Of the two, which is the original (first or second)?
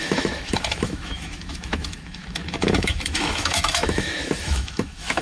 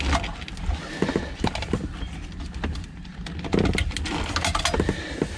second